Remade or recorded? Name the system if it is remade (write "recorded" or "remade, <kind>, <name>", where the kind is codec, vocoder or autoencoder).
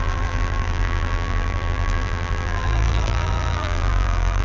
remade, vocoder, BigVGAN v2